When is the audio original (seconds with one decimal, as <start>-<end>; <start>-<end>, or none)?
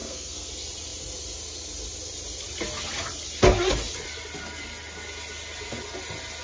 0.5-6.4